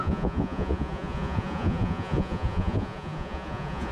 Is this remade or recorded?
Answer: remade